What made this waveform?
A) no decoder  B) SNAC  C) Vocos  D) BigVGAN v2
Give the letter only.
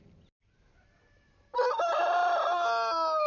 A